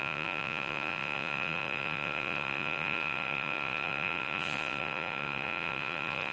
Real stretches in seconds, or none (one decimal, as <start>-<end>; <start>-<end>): none